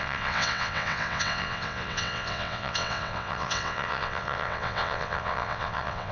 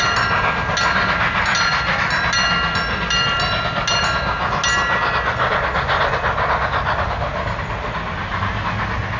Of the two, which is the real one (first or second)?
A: second